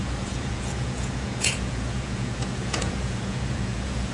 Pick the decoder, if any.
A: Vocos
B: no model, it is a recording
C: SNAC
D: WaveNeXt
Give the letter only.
A